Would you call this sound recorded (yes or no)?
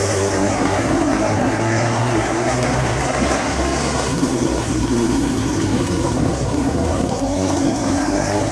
no